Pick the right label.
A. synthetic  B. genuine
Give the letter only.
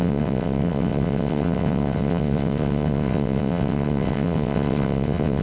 A